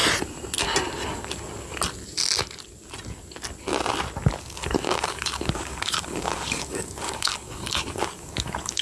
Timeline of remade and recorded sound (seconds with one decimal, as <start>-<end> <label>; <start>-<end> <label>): 0.0-4.4 recorded; 4.4-8.8 remade